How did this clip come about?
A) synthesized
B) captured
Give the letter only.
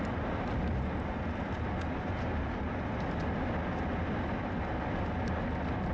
B